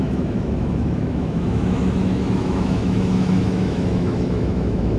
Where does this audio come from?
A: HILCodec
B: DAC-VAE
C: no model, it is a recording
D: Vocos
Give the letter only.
B